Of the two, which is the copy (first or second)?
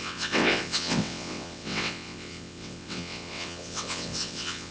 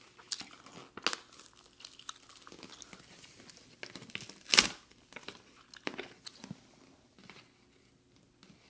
first